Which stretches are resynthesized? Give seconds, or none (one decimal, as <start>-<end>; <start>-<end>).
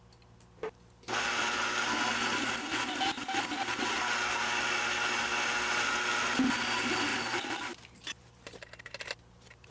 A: 7.1-9.7